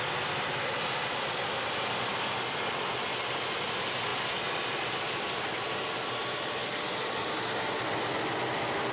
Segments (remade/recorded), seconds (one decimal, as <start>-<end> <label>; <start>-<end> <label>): 0.0-8.9 recorded